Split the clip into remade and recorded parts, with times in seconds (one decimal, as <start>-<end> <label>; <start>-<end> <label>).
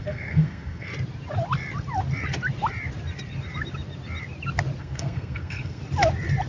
0.0-0.9 remade; 0.9-4.8 recorded; 4.8-5.8 remade; 5.8-6.5 recorded